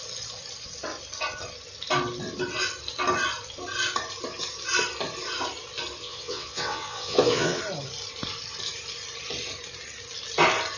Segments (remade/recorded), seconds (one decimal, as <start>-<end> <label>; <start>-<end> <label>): 0.0-6.0 recorded; 6.0-7.6 remade; 7.6-10.8 recorded